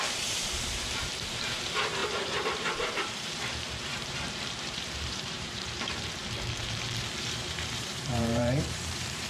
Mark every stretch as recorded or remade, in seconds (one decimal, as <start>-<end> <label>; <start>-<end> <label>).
0.0-6.2 remade; 6.2-7.2 recorded; 7.2-9.3 remade